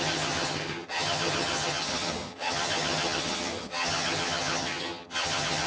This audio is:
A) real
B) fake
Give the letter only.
B